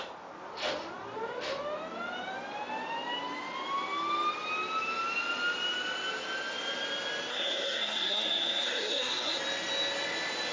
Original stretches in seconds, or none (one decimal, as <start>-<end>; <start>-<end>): 0.0-7.3; 9.4-10.5